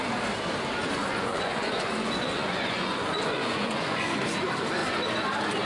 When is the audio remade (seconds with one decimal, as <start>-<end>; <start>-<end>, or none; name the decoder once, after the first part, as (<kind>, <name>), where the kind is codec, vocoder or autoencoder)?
0.8-4.2 (vocoder, Vocos)